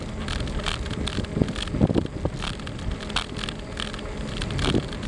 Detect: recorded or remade recorded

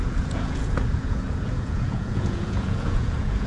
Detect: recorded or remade remade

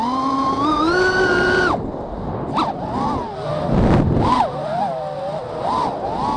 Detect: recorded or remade recorded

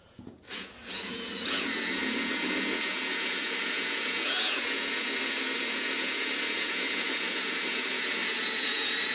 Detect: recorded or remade remade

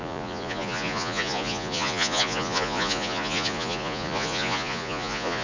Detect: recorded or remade remade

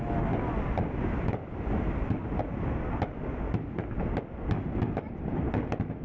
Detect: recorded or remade recorded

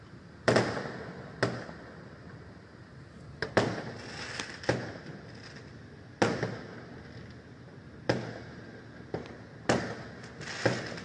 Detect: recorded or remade recorded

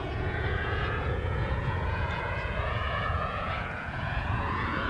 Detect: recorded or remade remade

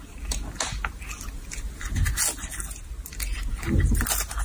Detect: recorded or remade recorded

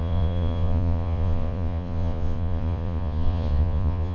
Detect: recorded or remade remade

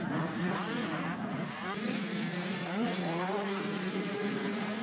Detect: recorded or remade remade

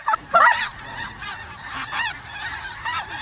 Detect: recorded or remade remade